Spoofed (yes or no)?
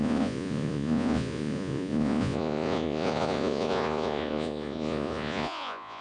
yes